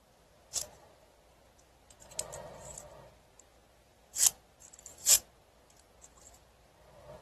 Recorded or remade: recorded